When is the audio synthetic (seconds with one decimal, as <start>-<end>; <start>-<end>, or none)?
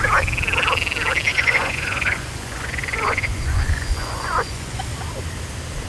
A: 1.3-4.8